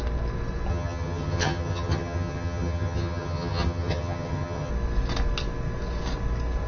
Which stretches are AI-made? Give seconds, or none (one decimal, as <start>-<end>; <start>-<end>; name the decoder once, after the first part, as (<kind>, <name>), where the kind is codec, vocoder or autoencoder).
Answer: 0.7-4.7 (vocoder, HiFi-GAN)